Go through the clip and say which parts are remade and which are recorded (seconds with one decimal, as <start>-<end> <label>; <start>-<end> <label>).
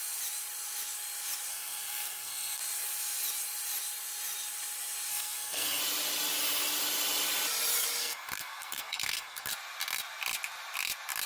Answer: 0.0-1.5 recorded; 1.5-2.6 remade; 2.6-5.1 recorded; 5.1-5.8 remade; 5.8-8.0 recorded; 8.0-9.5 remade; 9.5-11.3 recorded